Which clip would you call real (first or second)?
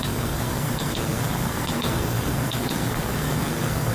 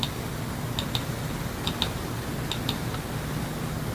second